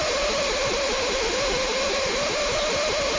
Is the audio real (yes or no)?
yes